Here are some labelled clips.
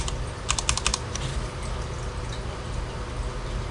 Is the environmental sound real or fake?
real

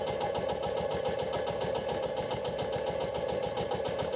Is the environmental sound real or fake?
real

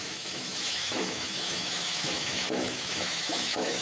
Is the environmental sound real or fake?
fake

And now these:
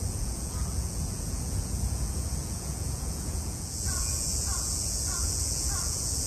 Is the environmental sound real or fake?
fake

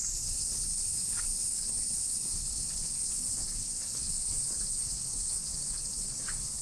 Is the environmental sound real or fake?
fake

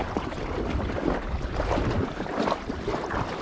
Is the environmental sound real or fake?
real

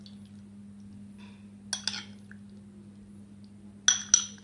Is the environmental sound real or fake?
real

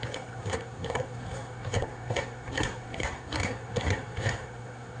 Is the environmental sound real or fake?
fake